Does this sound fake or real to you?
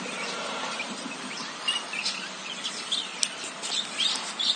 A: real